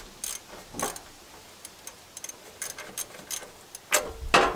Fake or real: real